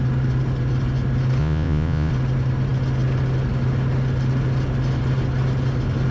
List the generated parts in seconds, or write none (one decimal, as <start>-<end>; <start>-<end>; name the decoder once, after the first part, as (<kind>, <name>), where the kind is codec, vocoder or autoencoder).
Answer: 1.4-2.1 (vocoder, Vocos)